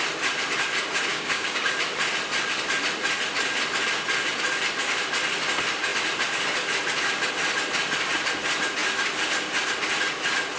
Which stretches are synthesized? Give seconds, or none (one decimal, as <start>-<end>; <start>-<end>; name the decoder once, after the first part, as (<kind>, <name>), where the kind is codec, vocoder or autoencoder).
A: 1.1-1.7 (codec, DAC)